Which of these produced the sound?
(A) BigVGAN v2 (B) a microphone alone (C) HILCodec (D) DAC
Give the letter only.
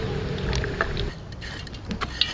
B